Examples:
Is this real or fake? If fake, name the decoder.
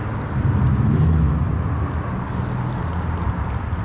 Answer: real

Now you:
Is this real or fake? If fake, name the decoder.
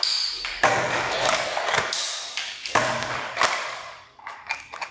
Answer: fake, codec, DAC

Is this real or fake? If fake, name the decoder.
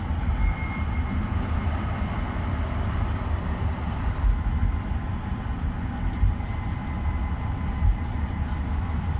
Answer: real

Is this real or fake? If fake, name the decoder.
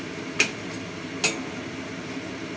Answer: real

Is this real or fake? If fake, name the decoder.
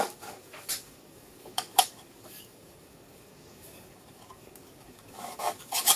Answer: fake, codec, DAC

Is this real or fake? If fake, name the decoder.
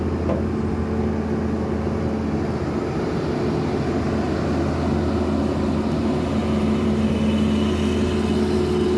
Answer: real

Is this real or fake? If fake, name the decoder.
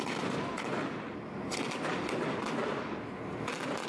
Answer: real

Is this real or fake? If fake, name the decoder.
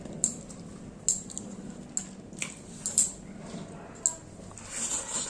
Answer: real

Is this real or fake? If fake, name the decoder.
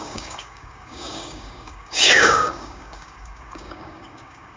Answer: fake, codec, DAC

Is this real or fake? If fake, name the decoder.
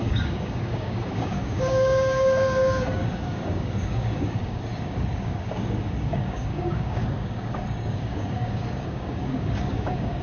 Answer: fake, codec, DAC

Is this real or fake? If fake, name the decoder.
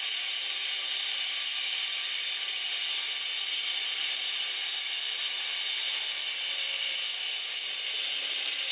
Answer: real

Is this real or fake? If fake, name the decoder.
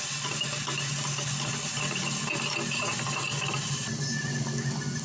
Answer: real